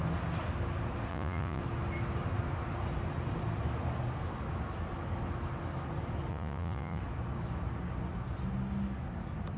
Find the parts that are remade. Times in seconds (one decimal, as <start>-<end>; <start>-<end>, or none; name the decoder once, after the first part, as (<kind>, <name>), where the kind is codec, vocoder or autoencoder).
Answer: 1.1-1.6 (vocoder, Vocos); 6.3-7.0